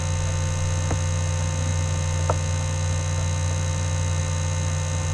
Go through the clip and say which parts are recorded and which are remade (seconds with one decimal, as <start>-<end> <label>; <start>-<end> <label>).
0.0-5.1 recorded